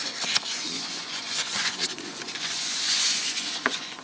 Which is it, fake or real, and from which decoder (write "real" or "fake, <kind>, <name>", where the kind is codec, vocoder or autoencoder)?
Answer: fake, vocoder, Vocos